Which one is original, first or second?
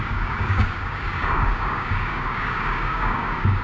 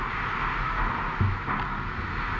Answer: second